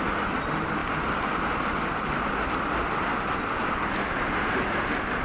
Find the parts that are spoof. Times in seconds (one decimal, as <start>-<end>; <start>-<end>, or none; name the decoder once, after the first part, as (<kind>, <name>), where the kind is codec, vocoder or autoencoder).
none